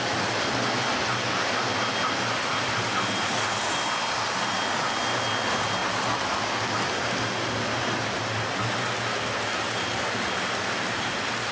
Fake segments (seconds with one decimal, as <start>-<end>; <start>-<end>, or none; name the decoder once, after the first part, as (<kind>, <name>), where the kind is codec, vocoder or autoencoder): none